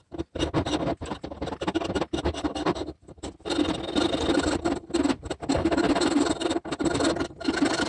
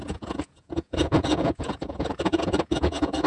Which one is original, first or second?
first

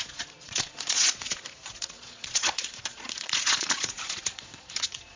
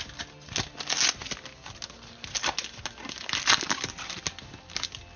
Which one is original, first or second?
second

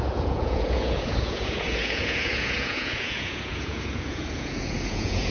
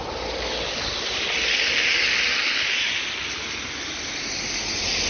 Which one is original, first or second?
second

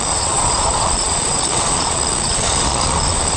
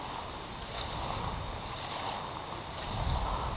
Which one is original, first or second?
second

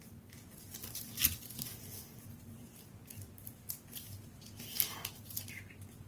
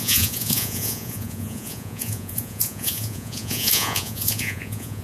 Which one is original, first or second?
first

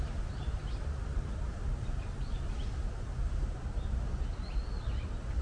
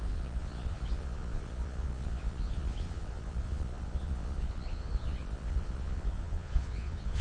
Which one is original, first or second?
first